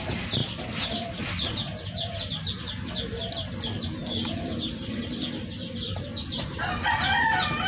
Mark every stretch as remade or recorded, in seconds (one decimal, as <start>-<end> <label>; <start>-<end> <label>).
0.0-7.7 recorded